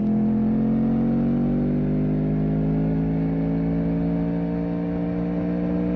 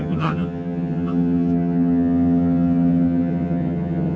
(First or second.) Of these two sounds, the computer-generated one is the second